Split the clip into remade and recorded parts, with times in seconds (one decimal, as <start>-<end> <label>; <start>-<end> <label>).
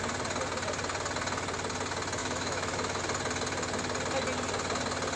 0.0-2.2 recorded; 2.2-3.0 remade; 3.0-5.2 recorded